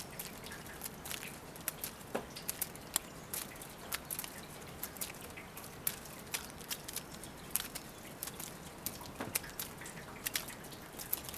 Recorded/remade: recorded